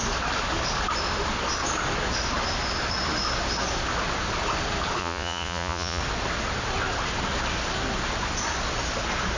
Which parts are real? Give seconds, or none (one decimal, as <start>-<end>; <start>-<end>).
0.0-5.0; 6.0-9.4